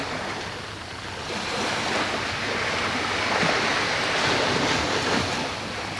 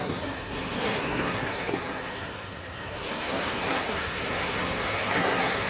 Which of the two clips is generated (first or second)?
second